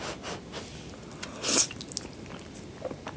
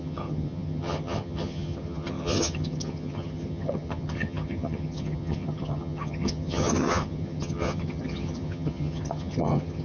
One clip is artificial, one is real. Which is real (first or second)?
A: first